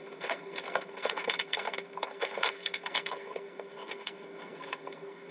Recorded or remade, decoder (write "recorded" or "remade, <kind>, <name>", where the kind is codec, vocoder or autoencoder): remade, codec, SNAC